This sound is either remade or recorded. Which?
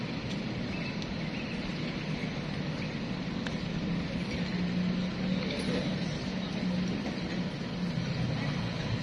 recorded